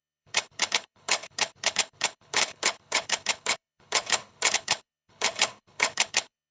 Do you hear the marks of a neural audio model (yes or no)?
yes